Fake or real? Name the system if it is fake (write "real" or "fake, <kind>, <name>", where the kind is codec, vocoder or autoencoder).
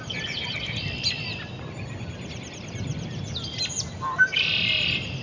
real